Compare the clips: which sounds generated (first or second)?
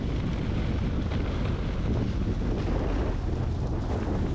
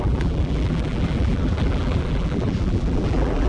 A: second